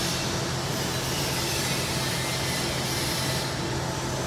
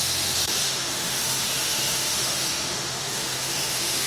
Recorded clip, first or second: first